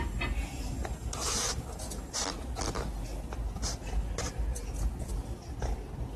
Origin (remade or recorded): recorded